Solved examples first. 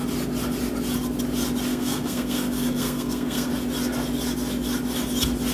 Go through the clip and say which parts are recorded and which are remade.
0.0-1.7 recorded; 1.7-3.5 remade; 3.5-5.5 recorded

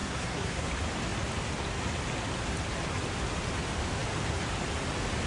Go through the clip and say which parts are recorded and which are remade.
0.0-0.7 remade; 0.7-5.3 recorded

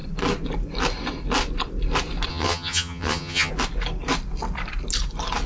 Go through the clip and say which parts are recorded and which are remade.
0.0-2.3 recorded; 2.3-3.5 remade; 3.5-5.5 recorded

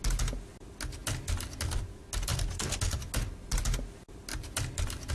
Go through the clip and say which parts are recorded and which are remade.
0.0-1.0 recorded; 1.0-1.6 remade; 1.6-4.3 recorded; 4.3-5.1 remade

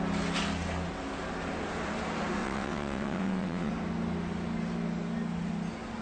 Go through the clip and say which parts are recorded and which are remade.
0.0-2.4 recorded; 2.4-3.7 remade; 3.7-6.0 recorded

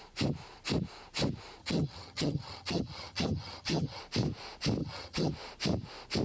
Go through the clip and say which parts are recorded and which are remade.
0.0-1.6 recorded; 1.6-4.0 remade; 4.0-4.8 recorded; 4.8-5.3 remade; 5.3-6.2 recorded